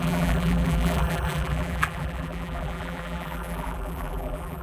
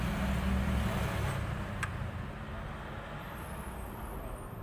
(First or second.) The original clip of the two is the second